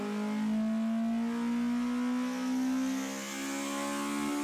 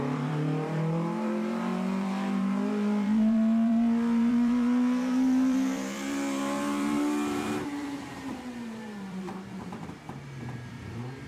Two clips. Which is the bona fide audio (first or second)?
first